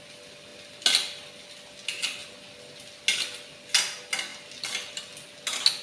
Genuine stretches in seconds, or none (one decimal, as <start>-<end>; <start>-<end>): 0.0-5.8